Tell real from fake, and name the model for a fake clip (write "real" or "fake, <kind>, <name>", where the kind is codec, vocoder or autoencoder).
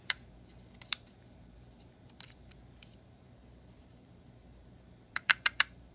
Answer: fake, vocoder, BigVGAN v2